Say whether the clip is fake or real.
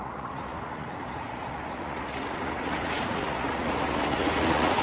fake